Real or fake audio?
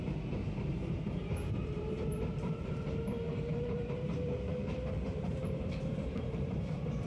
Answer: fake